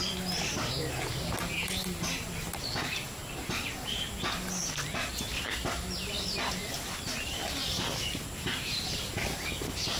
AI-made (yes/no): no